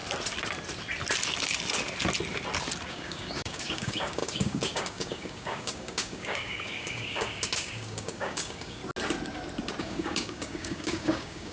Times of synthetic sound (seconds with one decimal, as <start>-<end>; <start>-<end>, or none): 2.9-8.8; 9.8-11.5